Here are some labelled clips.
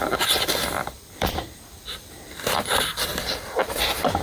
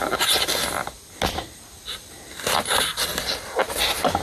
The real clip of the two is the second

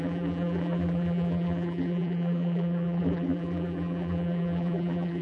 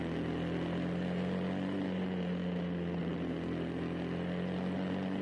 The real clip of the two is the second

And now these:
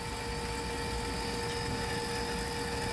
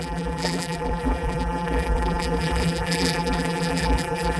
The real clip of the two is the first